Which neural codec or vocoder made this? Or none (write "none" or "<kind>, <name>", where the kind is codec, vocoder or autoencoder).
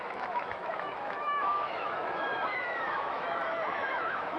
autoencoder, DAC-VAE